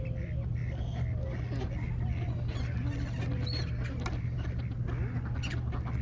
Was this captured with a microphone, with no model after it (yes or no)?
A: yes